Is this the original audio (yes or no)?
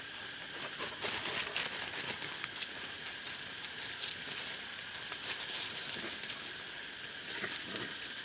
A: yes